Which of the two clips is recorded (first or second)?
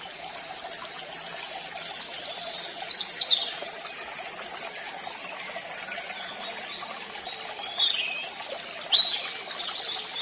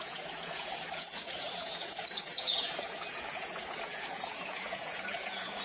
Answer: first